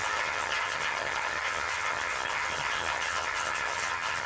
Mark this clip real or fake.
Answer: fake